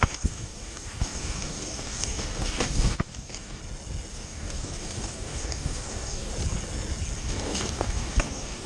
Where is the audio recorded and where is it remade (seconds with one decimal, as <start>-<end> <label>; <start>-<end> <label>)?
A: 0.0-3.6 remade; 3.6-4.1 recorded; 4.1-6.3 remade; 6.3-7.2 recorded; 7.2-8.7 remade